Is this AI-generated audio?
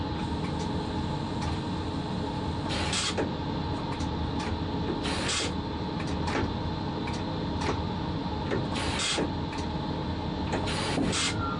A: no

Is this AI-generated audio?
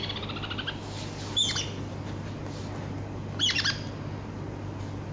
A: no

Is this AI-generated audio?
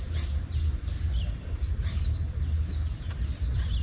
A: no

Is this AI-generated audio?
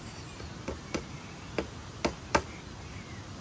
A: no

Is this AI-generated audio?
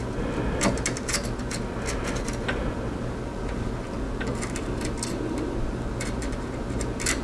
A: no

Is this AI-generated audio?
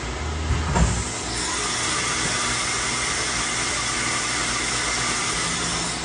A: no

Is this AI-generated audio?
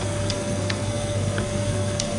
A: yes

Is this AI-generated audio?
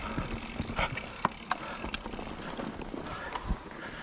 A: no